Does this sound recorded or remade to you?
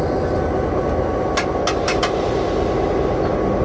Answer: recorded